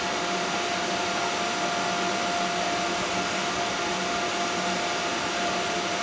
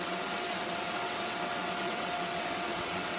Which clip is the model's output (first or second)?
second